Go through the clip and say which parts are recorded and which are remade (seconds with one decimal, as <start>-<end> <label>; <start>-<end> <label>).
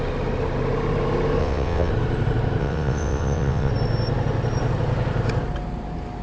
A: 0.0-1.4 recorded; 1.4-1.9 remade; 1.9-2.6 recorded; 2.6-3.7 remade; 3.7-6.2 recorded